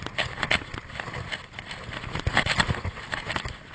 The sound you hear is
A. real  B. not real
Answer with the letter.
A